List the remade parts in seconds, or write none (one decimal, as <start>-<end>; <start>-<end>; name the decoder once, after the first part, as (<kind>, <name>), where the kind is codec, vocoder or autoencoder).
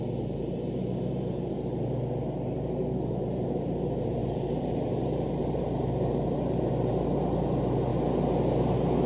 0.0-7.9 (vocoder, BigVGAN v2); 8.7-9.1